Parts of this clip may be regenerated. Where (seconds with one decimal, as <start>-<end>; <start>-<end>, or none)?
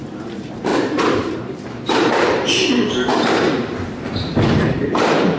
0.0-5.4